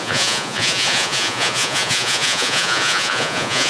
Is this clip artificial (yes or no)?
yes